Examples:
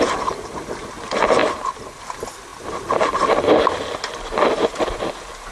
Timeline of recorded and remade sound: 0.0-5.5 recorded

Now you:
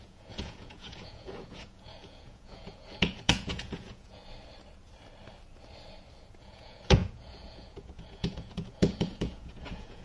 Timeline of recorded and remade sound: 0.0-4.2 remade; 4.2-6.4 recorded; 6.4-10.0 remade

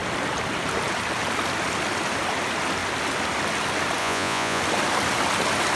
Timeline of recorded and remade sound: 0.0-4.0 recorded; 4.0-4.6 remade; 4.6-5.8 recorded

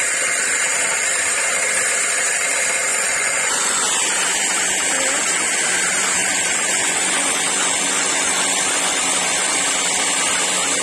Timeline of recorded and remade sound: 0.0-2.9 recorded; 2.9-3.8 remade; 3.8-6.2 recorded; 6.2-9.6 remade; 9.6-10.8 recorded

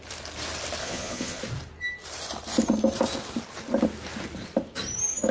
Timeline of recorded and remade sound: 0.0-0.8 recorded; 0.8-1.4 remade; 1.4-5.3 recorded

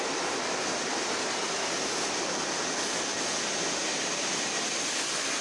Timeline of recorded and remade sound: 0.0-5.4 recorded

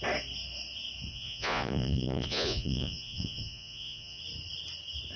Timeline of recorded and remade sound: 0.0-1.1 recorded; 1.1-4.2 remade; 4.2-5.2 recorded